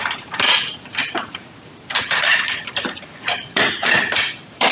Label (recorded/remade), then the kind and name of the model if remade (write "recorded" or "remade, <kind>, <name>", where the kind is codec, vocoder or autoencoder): remade, vocoder, BigVGAN v2